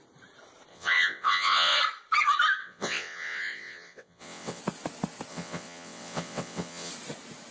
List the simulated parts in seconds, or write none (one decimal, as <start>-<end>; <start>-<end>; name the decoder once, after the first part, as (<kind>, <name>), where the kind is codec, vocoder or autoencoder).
0.7-1.8 (vocoder, WaveNeXt); 2.6-4.6; 5.3-6.9